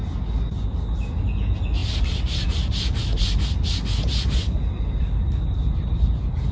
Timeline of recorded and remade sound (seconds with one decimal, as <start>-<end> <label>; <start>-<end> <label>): 0.0-6.5 recorded